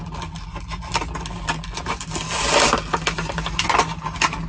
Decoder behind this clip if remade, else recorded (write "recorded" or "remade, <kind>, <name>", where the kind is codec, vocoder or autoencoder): recorded